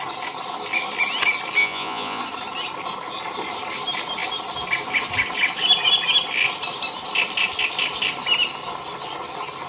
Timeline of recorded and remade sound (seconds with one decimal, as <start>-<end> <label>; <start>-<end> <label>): 0.0-1.6 recorded; 1.6-2.2 remade; 2.2-9.7 recorded